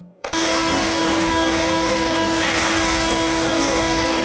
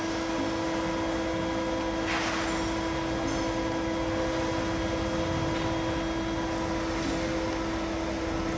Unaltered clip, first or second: second